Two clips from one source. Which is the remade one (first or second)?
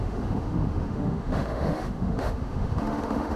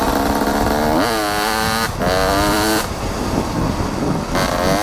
first